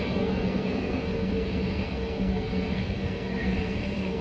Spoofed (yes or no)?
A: yes